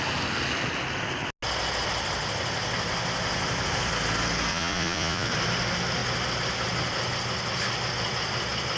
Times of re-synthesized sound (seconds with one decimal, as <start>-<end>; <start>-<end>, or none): 4.5-5.3